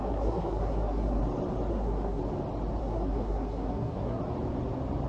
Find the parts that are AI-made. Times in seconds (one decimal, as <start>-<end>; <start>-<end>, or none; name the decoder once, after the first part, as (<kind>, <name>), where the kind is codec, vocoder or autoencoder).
0.0-1.2 (codec, SNAC); 1.7-2.2; 2.8-4.2